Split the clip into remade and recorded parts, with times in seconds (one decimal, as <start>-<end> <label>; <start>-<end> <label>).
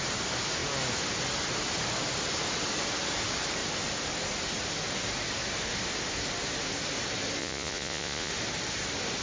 0.0-7.4 recorded; 7.4-8.3 remade; 8.3-9.2 recorded